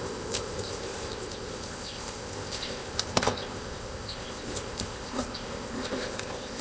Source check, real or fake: fake